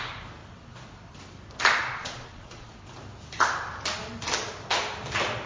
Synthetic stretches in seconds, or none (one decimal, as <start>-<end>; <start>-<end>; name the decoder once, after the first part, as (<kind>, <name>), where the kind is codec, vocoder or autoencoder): 1.8-2.7 (vocoder, Vocos)

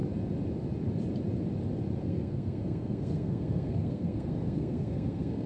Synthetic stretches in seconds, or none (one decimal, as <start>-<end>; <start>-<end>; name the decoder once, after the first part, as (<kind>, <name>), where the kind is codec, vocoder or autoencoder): 2.0-5.5 (codec, SNAC)

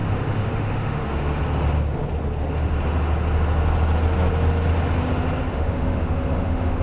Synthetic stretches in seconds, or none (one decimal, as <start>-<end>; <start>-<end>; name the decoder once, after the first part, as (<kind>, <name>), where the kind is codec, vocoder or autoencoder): 0.0-1.4 (autoencoder, DAC-VAE); 5.5-6.8

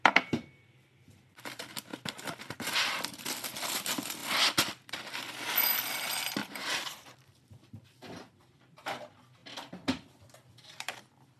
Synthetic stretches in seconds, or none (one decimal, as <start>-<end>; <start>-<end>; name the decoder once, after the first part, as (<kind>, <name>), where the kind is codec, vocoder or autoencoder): 6.4-8.3 (vocoder, BigVGAN v2)

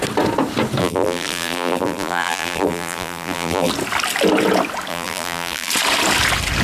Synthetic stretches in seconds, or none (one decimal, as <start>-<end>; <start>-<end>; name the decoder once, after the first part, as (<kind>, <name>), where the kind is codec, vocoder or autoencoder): 0.8-3.7 (vocoder, BigVGAN v2); 4.9-5.7

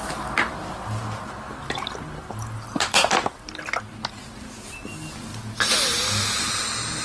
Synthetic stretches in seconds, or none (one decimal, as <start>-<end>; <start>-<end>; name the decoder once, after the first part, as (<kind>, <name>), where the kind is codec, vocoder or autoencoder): 0.0-5.3 (vocoder, BigVGAN v2); 6.4-7.0

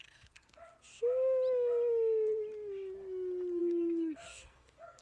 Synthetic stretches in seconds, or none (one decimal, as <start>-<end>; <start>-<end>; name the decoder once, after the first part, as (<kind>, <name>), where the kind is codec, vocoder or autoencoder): 0.0-0.6 (codec, SNAC); 3.6-5.0

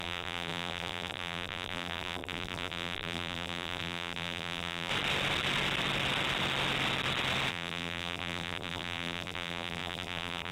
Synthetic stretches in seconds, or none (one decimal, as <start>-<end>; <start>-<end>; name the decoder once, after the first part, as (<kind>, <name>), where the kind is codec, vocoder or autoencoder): 0.0-4.9 (vocoder, BigVGAN v2); 7.5-10.5